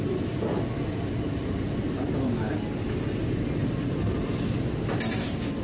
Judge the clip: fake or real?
real